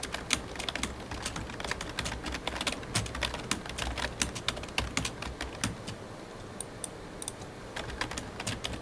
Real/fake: real